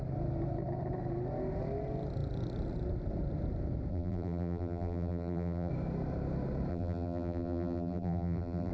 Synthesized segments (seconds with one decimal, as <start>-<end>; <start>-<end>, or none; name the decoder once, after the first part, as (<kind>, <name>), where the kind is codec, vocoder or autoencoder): 3.9-5.7 (vocoder, BigVGAN v2); 6.7-8.7